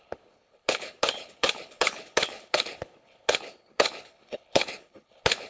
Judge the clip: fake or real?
fake